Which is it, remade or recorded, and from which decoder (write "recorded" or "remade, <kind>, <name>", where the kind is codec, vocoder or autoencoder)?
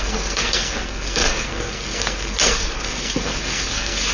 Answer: remade, codec, SNAC